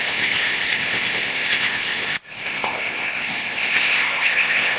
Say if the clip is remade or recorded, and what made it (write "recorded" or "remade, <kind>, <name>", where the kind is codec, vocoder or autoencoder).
remade, codec, ZipCodec